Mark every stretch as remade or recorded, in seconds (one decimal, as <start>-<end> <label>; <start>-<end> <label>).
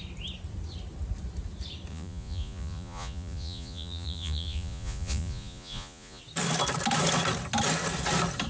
0.0-1.9 recorded; 1.9-6.2 remade; 6.2-8.5 recorded